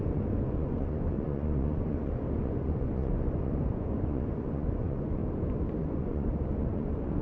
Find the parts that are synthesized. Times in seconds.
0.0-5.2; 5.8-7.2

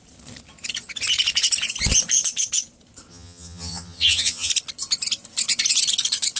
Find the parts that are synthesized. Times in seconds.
3.1-4.5

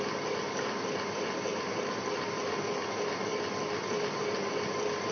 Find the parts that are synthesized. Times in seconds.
none